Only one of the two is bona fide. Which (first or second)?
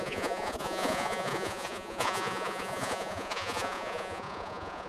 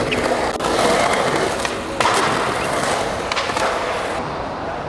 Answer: second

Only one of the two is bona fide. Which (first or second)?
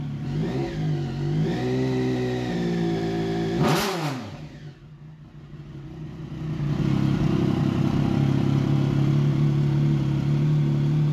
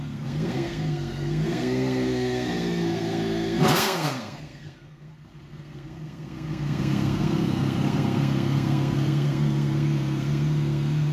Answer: first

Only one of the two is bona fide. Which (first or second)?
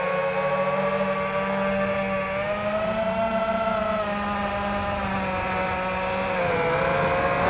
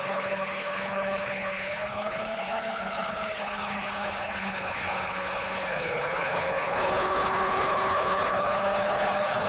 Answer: first